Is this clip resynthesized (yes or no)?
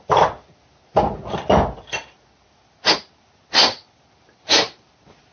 no